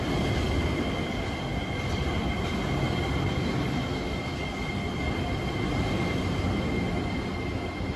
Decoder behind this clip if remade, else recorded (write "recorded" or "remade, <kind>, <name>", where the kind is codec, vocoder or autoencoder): recorded